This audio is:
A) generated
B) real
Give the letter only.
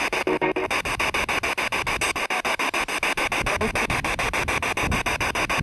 B